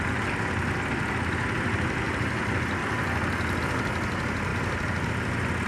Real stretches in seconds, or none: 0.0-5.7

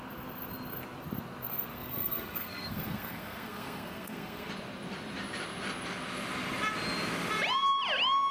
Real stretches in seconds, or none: 0.0-1.7; 4.5-8.3

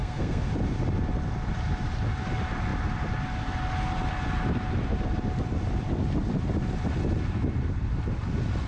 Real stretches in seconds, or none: 0.5-8.7

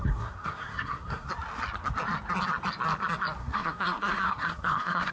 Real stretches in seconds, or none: 1.3-3.4